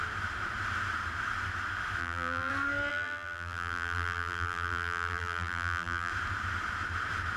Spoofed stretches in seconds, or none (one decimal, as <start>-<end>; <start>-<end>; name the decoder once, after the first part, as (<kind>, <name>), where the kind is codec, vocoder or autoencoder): 2.0-2.5 (vocoder, BigVGAN v2); 2.9-6.1